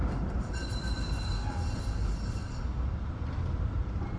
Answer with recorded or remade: recorded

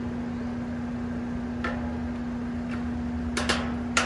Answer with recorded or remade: recorded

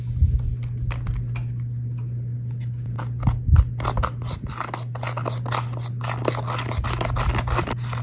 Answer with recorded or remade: recorded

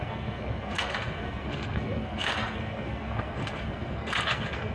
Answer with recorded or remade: remade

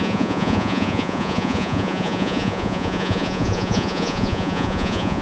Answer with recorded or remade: remade